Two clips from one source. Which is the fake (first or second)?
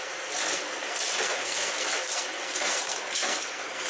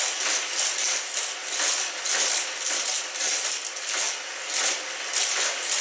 first